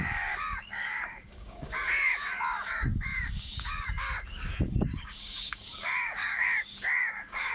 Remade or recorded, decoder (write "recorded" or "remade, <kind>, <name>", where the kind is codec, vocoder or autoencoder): remade, codec, DAC